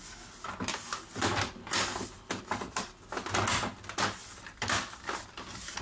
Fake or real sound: real